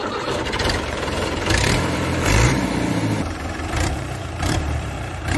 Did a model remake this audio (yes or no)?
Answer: yes